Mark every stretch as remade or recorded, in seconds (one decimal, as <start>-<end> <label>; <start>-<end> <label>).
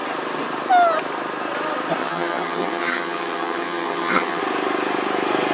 0.0-2.0 recorded; 2.0-4.4 remade; 4.4-5.5 recorded